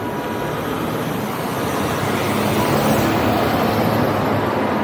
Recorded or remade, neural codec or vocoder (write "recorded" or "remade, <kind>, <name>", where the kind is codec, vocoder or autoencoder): recorded